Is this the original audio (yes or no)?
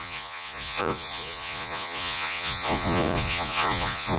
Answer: no